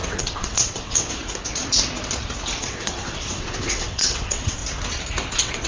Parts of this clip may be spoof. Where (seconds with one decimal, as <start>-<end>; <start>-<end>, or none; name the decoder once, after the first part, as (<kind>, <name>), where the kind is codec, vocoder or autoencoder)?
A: 0.0-1.2 (vocoder, WaveNeXt); 2.6-4.6; 5.3-5.7